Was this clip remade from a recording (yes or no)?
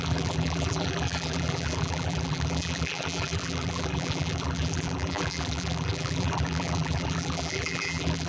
yes